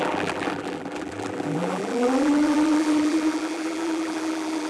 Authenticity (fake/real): fake